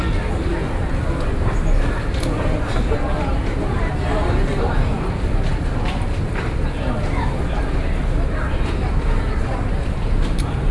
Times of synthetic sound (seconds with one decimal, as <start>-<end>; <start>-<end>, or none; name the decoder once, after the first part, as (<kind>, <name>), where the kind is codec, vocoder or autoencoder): none